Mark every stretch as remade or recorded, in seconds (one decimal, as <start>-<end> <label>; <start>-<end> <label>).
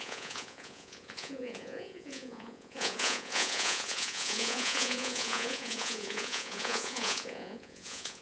0.0-8.2 remade